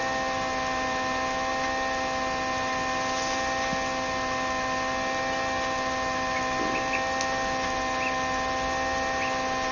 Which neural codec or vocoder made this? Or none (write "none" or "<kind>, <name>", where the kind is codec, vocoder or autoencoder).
none